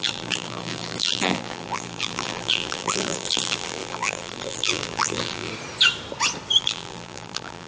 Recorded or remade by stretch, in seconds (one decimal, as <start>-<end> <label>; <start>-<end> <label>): 0.0-5.5 remade; 5.5-6.6 recorded; 6.6-7.7 remade